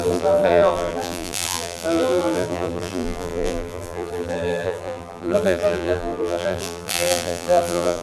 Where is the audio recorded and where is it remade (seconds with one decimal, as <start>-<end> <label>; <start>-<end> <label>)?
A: 0.0-8.0 remade